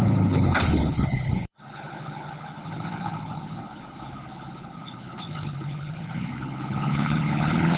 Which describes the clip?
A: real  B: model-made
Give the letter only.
B